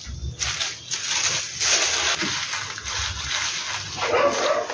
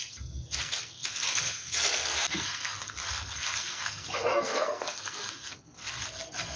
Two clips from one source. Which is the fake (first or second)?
second